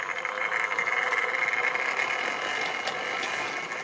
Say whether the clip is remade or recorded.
recorded